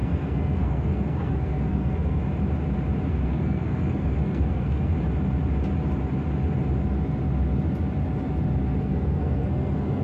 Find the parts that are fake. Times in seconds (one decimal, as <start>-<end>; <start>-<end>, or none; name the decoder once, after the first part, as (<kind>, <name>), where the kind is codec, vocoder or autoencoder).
0.0-2.2 (codec, SNAC); 3.1-4.9; 8.8-10.0